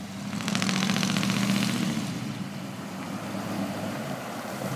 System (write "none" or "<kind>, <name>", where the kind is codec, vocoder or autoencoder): none